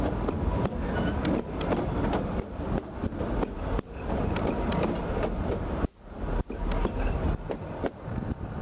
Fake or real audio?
real